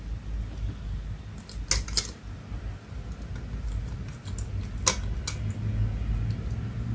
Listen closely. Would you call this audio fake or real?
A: real